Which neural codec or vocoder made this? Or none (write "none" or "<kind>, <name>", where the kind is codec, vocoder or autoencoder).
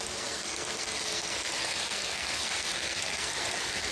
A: codec, SNAC